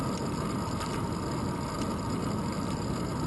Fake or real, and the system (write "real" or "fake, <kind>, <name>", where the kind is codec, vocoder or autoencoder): real